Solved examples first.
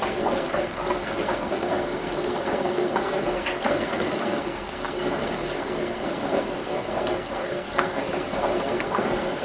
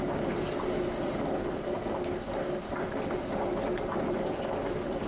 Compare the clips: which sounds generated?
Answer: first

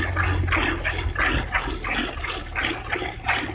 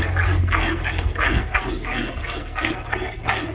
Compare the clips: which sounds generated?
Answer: second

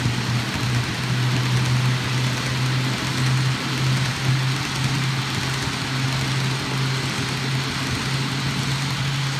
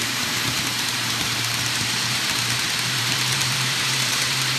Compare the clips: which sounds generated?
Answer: second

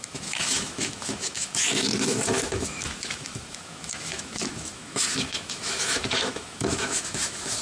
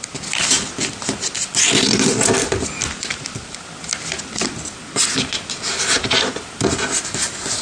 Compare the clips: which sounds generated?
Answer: first